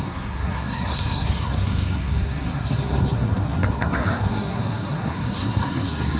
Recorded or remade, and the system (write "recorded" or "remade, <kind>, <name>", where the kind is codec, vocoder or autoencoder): remade, codec, SNAC